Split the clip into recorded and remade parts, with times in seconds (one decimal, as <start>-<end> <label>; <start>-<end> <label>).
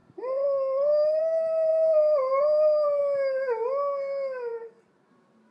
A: 0.0-5.5 recorded